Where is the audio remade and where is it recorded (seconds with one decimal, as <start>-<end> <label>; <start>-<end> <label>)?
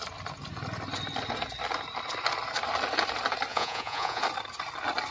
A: 0.0-3.5 recorded; 3.5-4.2 remade; 4.2-5.1 recorded